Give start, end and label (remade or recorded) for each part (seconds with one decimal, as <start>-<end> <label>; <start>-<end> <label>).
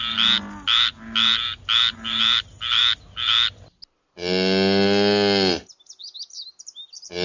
0.0-7.2 recorded